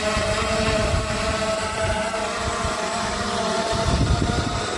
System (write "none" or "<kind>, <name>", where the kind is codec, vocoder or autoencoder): vocoder, BigVGAN v2